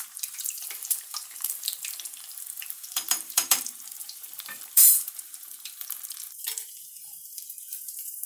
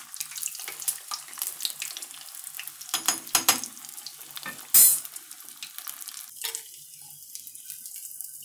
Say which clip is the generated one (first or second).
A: first